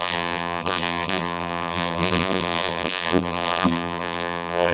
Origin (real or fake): fake